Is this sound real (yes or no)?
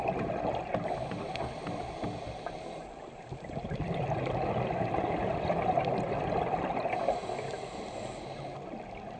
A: yes